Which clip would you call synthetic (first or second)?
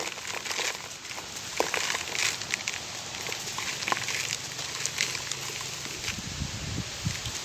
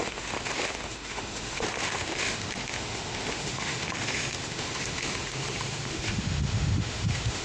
second